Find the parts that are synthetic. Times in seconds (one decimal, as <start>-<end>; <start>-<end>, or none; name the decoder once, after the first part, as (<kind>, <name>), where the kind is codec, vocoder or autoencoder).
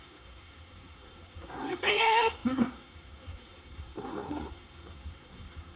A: 0.0-5.8 (codec, SNAC)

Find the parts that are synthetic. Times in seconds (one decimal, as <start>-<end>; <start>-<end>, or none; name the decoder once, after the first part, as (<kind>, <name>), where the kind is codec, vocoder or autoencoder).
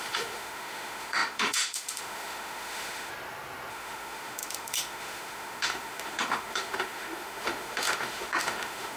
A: 0.0-3.1 (autoencoder, DAC-VAE); 3.7-9.0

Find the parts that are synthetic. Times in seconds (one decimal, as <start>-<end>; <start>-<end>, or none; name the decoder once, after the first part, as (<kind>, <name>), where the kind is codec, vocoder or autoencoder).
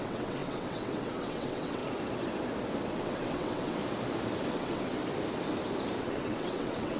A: 0.0-1.8 (vocoder, WaveNeXt); 3.0-3.8; 4.5-4.9; 6.0-7.0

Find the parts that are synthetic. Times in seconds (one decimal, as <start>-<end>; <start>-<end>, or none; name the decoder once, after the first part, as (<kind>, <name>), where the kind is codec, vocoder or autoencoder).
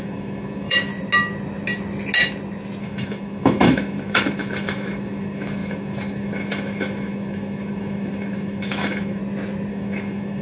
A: 0.0-0.9 (autoencoder, DAC-VAE); 2.8-9.2; 9.7-10.4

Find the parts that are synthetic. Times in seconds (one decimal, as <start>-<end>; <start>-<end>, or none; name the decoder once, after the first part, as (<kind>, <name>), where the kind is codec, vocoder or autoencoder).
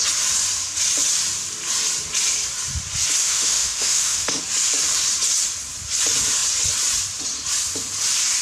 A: 3.2-4.4 (autoencoder, DAC-VAE)